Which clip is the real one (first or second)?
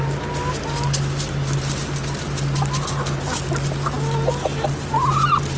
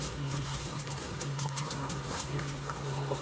first